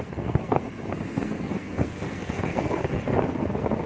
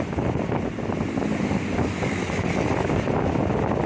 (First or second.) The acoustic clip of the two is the second